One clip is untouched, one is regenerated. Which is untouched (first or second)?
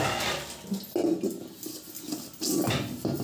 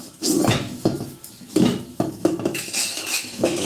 first